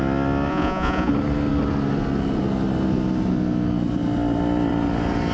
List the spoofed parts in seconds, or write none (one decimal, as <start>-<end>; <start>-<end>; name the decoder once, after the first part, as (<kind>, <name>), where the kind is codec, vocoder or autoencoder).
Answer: 0.5-1.1 (vocoder, Vocos)